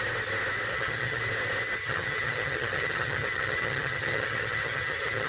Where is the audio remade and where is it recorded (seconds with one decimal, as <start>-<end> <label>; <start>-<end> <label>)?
0.0-0.7 recorded; 0.7-1.2 remade; 1.2-1.8 recorded; 1.8-5.3 remade

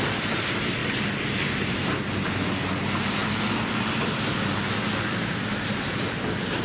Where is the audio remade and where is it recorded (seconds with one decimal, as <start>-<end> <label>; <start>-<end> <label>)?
0.0-6.6 recorded

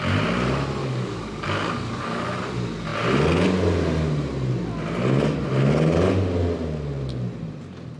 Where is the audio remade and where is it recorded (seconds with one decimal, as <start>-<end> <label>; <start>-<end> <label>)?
0.0-0.8 recorded; 0.8-2.4 remade; 2.4-8.0 recorded

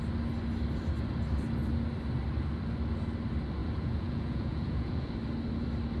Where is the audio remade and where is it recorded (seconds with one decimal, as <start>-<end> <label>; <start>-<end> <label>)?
0.0-3.6 recorded; 3.6-5.1 remade; 5.1-6.0 recorded